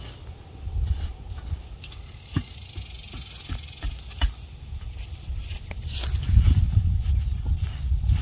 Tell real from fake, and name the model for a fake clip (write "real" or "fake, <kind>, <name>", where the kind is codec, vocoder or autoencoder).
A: real